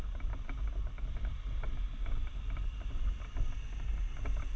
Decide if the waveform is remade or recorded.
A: recorded